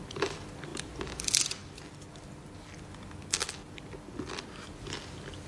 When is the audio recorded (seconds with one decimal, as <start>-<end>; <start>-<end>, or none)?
0.0-5.5